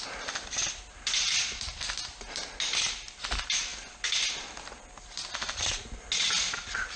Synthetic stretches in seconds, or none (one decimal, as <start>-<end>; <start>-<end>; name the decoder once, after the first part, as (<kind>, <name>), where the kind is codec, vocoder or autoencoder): none